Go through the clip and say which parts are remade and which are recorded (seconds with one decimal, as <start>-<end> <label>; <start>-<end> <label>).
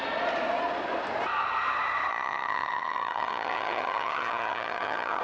0.0-2.1 recorded; 2.1-5.2 remade